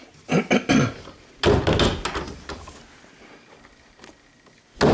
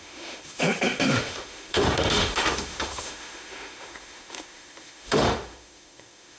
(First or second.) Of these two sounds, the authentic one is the first